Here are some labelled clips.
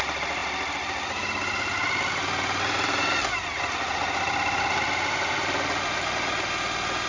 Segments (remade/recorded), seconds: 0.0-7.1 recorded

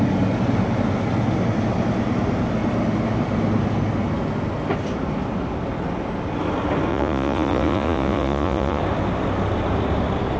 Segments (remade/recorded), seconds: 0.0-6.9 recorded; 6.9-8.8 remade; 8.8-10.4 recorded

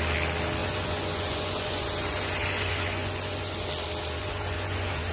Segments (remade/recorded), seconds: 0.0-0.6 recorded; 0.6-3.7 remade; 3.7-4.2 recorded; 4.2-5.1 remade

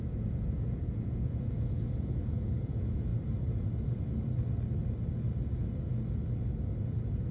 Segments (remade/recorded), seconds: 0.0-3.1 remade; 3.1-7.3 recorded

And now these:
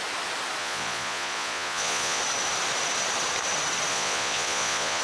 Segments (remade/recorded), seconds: 0.0-0.6 recorded; 0.6-2.2 remade; 2.2-3.9 recorded; 3.9-5.0 remade

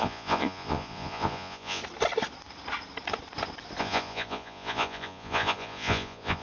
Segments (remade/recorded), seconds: 0.0-1.8 remade; 1.8-3.8 recorded; 3.8-6.4 remade